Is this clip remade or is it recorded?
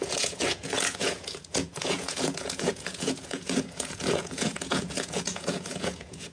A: remade